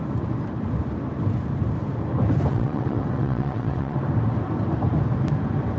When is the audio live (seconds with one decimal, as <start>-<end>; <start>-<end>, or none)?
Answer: 0.0-2.5; 4.0-5.8